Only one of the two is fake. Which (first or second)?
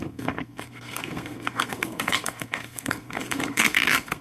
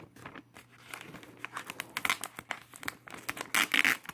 first